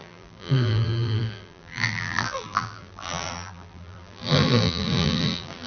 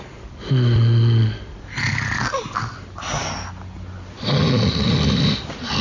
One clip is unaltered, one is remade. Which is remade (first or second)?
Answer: first